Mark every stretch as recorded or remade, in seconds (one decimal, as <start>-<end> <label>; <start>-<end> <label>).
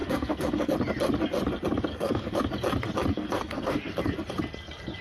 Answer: 0.0-0.7 remade; 0.7-1.9 recorded; 1.9-2.4 remade; 2.4-3.1 recorded; 3.1-3.8 remade; 3.8-5.0 recorded